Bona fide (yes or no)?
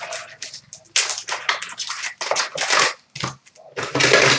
yes